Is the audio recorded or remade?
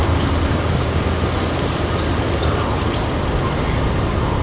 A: recorded